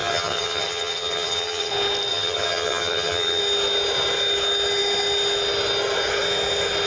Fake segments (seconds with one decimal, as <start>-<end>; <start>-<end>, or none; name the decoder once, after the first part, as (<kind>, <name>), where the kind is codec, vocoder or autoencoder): 0.0-1.7 (vocoder, HiFi-GAN); 2.1-3.4